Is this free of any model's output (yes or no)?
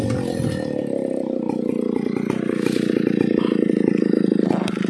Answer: yes